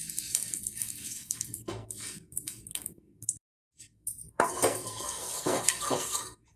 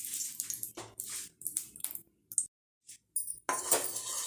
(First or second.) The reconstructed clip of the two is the first